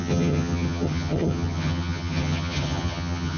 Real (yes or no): no